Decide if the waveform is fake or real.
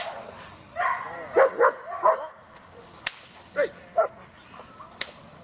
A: real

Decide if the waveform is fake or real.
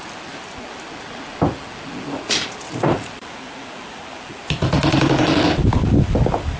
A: real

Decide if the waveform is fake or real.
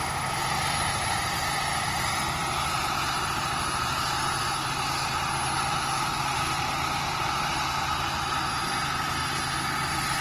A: real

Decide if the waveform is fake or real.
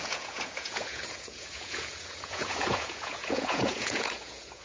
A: fake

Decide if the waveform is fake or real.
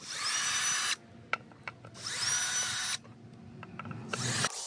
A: real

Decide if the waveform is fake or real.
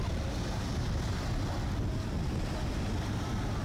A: real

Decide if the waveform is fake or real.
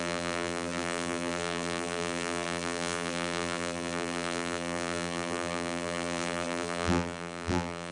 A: fake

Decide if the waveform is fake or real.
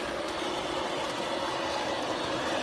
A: real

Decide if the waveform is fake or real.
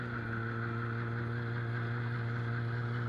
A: real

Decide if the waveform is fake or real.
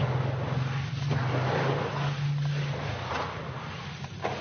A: real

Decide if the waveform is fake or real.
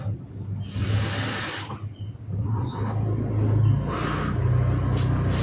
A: real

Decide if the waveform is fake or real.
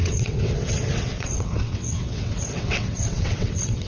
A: fake